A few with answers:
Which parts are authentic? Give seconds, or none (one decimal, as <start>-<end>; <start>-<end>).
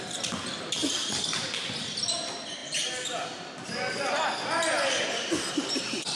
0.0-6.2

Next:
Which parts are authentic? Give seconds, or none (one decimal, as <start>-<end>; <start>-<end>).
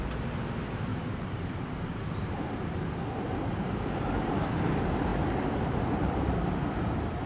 0.0-0.9; 2.6-3.3; 4.0-5.1; 6.5-7.3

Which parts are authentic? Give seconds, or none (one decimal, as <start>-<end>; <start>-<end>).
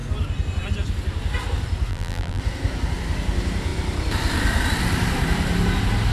0.0-1.9; 2.4-6.1